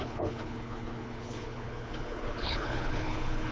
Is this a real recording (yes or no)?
no